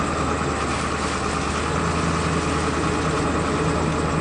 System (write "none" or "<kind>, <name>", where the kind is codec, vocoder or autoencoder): none